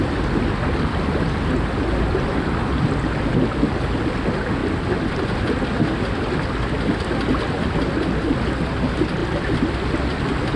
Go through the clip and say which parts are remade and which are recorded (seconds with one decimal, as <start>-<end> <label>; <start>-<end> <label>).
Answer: 0.0-10.6 recorded